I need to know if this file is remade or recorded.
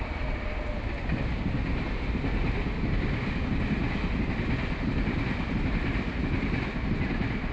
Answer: recorded